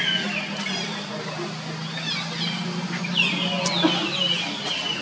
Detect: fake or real real